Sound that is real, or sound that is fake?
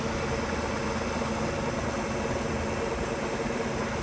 real